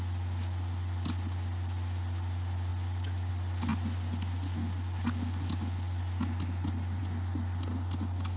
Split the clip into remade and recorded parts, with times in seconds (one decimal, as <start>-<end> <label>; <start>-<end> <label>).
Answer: 0.0-8.4 recorded